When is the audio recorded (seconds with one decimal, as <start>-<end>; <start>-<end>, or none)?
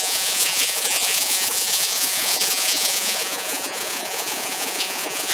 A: none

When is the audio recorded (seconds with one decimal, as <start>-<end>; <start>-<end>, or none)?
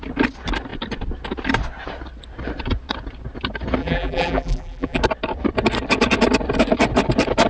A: 0.0-3.8; 5.0-7.5